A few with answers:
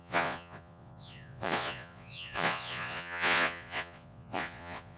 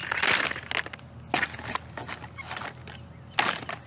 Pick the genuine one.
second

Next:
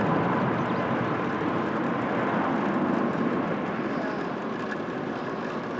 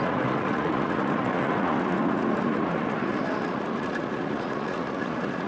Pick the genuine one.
first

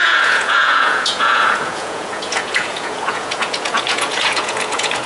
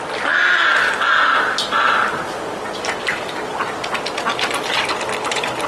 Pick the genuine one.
second